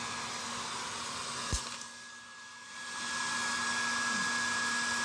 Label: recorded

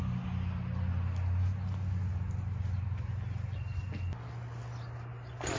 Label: recorded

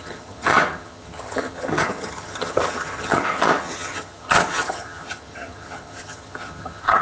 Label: remade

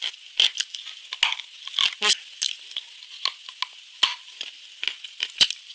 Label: recorded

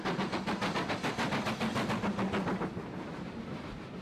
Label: recorded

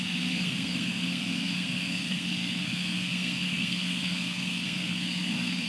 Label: remade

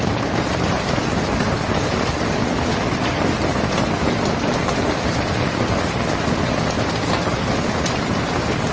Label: recorded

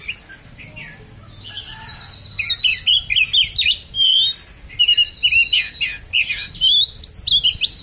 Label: recorded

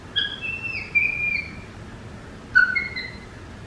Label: recorded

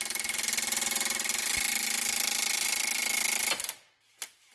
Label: recorded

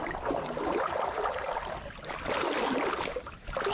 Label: recorded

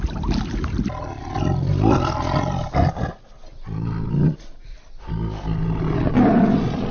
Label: recorded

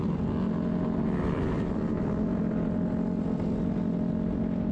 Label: recorded